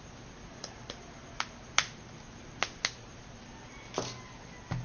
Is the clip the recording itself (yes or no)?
yes